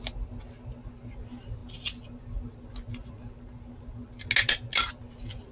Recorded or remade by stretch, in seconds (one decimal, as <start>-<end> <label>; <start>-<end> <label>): 0.0-5.5 recorded